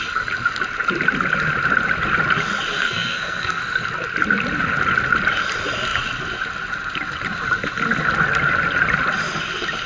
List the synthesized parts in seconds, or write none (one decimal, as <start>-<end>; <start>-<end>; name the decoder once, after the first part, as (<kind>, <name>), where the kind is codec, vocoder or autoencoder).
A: 2.8-3.6 (codec, SNAC)

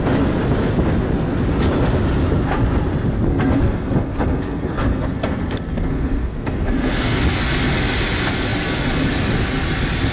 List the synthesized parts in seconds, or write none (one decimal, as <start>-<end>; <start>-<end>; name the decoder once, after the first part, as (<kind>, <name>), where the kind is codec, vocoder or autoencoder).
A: 3.3-7.2 (codec, SNAC)

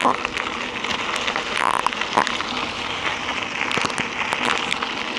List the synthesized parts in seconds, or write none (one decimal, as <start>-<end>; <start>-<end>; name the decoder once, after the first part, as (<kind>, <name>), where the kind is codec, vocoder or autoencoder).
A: none